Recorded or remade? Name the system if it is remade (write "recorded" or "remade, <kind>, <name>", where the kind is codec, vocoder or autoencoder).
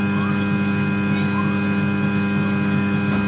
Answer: recorded